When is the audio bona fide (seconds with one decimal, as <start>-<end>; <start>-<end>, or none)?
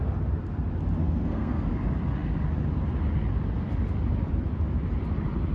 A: 0.0-1.0; 1.7-5.5